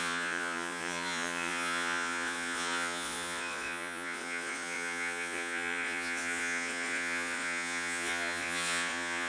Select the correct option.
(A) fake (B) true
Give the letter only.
A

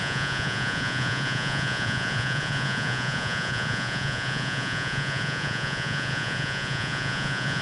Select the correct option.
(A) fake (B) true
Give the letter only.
A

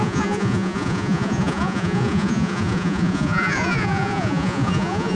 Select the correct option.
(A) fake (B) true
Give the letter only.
A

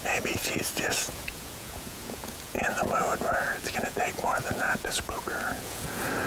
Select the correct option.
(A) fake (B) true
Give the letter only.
A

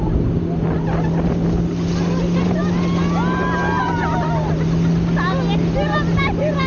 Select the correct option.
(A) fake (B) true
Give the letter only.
B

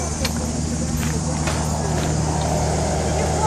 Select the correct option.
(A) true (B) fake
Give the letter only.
A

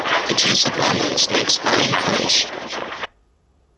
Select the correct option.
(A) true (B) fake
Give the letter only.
B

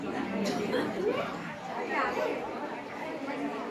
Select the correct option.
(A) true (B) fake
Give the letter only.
A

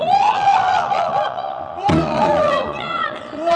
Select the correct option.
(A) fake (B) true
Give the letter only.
A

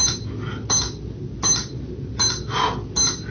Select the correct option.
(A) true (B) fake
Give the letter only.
A